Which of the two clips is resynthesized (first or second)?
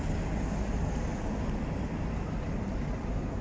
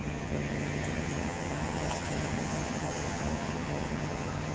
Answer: second